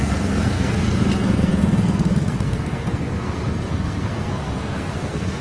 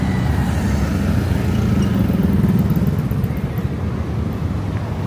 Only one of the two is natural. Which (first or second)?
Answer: second